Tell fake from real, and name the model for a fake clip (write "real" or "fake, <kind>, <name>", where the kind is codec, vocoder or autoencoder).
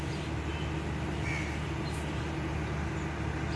real